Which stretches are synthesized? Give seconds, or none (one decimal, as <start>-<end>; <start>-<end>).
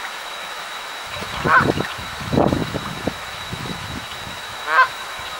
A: 0.0-5.4